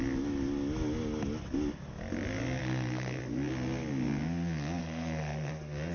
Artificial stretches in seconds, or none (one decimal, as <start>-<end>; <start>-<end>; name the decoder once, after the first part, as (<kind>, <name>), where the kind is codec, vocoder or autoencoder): 2.6-3.2 (codec, SNAC); 4.8-5.5